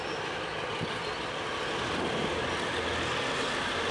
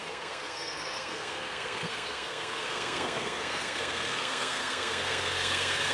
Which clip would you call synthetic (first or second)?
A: second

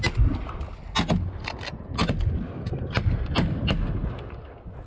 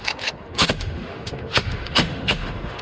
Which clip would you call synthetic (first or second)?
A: second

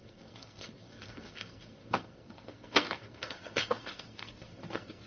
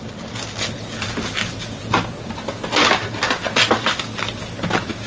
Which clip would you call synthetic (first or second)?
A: first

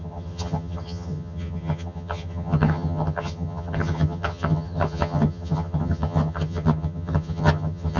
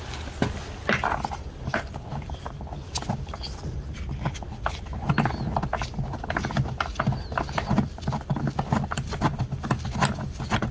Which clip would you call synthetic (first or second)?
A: first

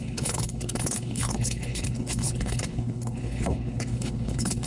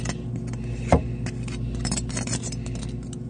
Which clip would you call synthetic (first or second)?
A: first